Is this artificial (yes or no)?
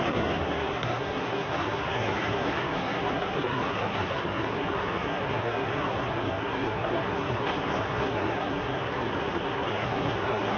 yes